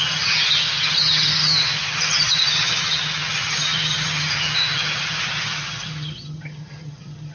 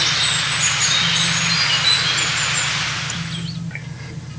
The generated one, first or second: first